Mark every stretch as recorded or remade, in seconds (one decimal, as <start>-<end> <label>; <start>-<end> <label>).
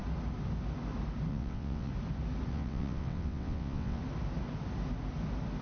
0.0-1.3 recorded; 1.3-1.9 remade; 1.9-2.5 recorded; 2.5-4.0 remade; 4.0-5.6 recorded